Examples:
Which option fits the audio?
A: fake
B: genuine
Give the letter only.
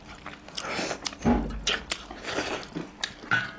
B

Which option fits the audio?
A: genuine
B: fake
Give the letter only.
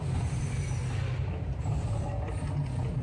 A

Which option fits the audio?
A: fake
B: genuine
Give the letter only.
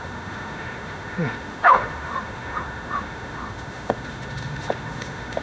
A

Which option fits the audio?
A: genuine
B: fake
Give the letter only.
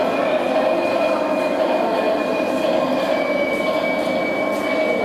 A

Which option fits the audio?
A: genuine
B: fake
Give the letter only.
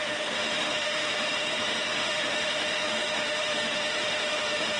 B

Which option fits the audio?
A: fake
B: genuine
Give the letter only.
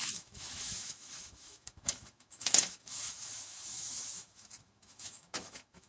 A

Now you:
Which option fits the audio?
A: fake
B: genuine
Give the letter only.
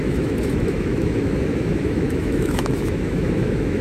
A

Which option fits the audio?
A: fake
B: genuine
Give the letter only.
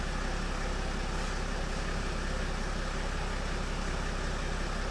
B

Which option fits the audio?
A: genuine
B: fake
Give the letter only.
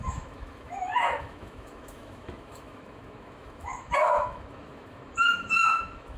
B